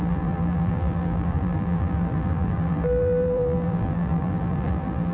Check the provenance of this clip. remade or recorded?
remade